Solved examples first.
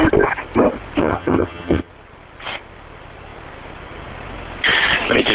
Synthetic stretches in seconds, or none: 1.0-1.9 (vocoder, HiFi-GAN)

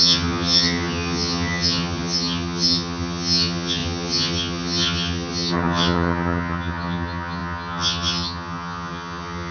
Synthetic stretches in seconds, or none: 0.0-9.5 (vocoder, HiFi-GAN)